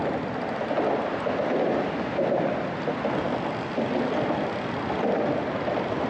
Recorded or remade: recorded